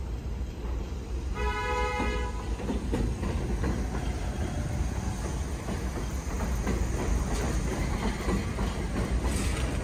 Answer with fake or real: real